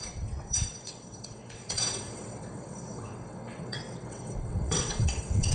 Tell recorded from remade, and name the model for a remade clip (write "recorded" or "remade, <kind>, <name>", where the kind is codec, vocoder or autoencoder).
remade, vocoder, WaveNeXt